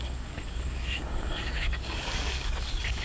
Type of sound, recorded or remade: remade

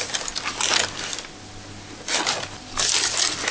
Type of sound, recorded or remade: recorded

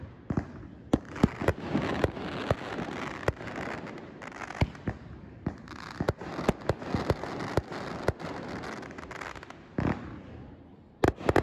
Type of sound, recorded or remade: recorded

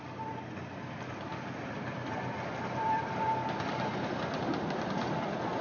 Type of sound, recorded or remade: recorded